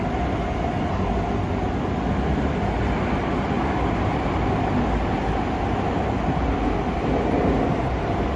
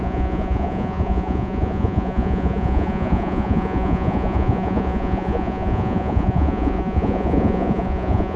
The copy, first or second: second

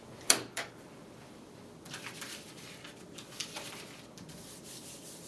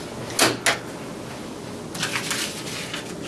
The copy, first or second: first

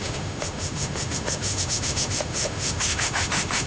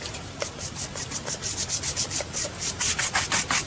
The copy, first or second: first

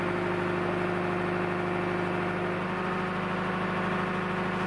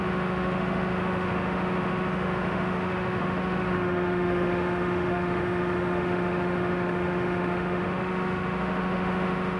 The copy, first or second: second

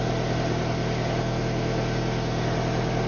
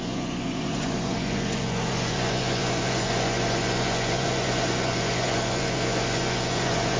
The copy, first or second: second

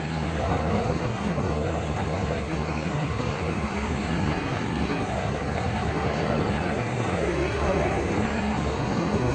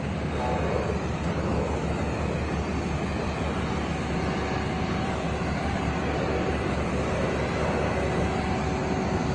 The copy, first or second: first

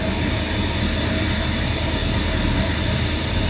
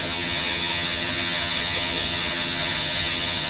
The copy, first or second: second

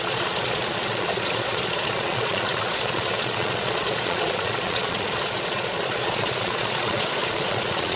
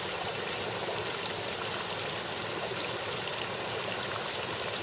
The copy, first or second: first